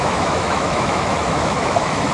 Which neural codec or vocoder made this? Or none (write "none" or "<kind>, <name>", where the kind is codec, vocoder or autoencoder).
autoencoder, DAC-VAE